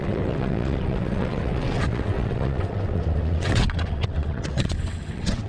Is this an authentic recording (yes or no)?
no